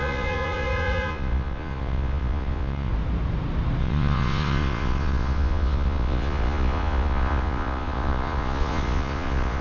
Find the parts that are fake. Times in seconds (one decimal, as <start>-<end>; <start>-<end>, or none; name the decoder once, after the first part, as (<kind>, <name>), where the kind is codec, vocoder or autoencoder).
0.0-2.9 (vocoder, Vocos); 3.8-9.6